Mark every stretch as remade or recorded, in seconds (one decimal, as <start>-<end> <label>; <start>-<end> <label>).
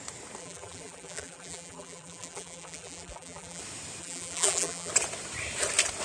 0.0-0.4 recorded; 0.4-3.6 remade; 3.6-4.0 recorded; 4.0-4.9 remade; 4.9-6.0 recorded